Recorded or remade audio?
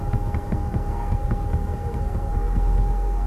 remade